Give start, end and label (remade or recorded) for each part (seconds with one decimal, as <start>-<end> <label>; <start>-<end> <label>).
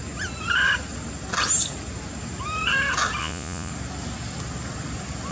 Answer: 0.0-3.2 recorded; 3.2-3.7 remade; 3.7-5.3 recorded